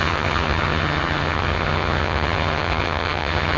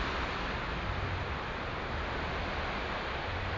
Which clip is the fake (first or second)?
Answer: first